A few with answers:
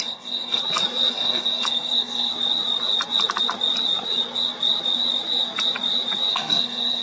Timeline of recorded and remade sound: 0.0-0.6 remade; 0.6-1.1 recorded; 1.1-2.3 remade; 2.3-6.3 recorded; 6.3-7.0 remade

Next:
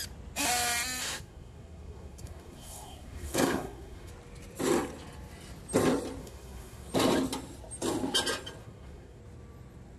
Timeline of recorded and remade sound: 0.0-1.0 recorded; 1.0-4.1 remade; 4.1-6.2 recorded; 6.2-6.9 remade; 6.9-8.6 recorded; 8.6-9.2 remade; 9.2-10.0 recorded

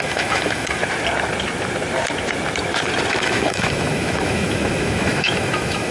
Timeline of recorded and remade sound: 0.0-0.8 remade; 0.8-3.2 recorded; 3.2-5.9 remade